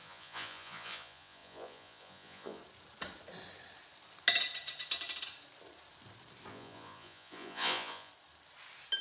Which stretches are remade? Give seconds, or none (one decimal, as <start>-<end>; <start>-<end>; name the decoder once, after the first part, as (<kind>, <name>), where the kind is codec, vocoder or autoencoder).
0.0-2.6 (vocoder, Vocos); 6.5-8.1